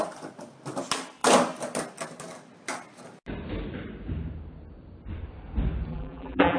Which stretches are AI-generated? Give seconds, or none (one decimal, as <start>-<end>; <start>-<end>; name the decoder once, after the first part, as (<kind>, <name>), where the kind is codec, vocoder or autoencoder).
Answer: 5.9-6.6 (vocoder, BigVGAN v2)